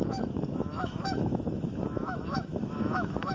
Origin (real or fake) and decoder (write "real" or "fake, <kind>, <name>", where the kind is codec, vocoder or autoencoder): fake, autoencoder, DAC-VAE